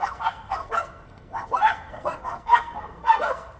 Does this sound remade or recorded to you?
remade